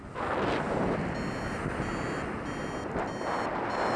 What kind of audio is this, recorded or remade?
recorded